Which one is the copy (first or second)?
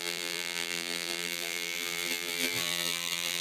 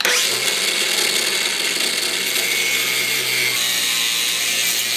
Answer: first